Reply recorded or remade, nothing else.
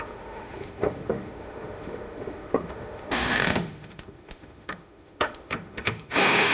remade